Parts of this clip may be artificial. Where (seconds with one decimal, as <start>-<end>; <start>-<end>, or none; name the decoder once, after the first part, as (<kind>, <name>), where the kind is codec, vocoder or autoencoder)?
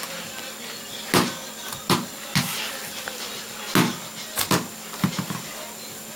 2.8-3.4 (vocoder, BigVGAN v2)